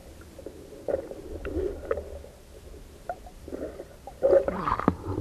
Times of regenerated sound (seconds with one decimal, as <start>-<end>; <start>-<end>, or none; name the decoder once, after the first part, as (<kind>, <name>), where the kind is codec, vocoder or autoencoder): 0.8-1.4 (vocoder, BigVGAN v2); 4.5-5.2